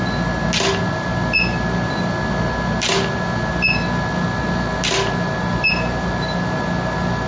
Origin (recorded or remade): recorded